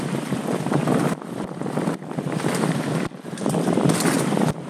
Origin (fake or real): fake